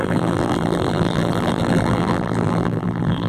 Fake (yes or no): yes